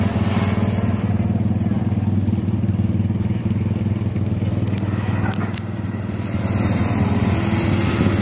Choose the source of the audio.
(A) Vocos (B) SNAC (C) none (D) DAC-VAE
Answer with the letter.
C